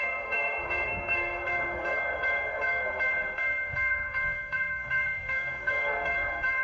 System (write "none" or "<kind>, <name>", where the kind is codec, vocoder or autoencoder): codec, SNAC